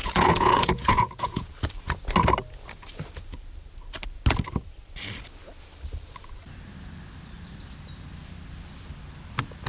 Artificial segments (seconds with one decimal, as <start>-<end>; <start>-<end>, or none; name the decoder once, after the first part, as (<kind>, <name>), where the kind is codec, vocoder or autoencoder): 0.0-1.5 (vocoder, Vocos)